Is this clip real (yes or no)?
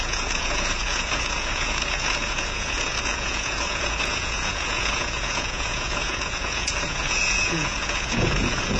no